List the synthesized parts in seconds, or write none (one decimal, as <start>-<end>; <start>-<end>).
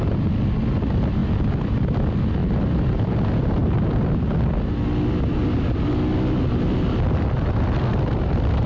none